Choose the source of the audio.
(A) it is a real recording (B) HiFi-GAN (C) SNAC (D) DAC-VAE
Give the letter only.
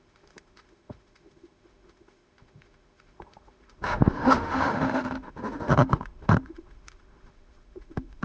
D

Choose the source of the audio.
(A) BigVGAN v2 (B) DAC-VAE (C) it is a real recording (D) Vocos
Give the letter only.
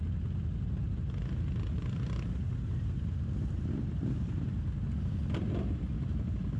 C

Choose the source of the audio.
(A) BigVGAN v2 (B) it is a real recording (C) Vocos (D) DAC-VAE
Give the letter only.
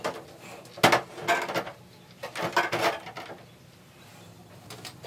B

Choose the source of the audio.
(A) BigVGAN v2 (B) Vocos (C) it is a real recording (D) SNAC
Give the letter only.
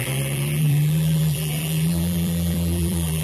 A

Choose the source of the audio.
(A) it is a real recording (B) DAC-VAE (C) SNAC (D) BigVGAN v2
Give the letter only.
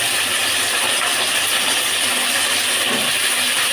D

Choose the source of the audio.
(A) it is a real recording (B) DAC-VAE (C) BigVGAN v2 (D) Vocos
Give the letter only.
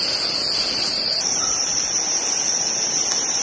A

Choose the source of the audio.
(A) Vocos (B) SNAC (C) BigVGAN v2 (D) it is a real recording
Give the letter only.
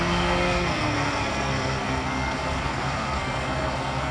B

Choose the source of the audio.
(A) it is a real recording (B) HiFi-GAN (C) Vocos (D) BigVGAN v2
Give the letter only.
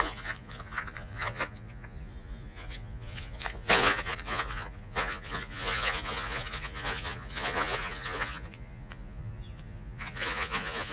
C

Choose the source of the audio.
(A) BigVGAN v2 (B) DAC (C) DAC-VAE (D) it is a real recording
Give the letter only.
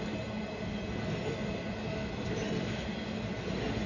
D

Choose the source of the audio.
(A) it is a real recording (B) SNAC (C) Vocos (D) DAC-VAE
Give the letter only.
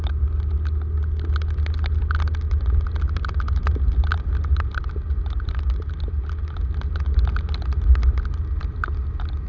A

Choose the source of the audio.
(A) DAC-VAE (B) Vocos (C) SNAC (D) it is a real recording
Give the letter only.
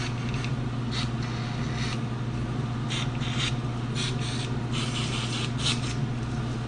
D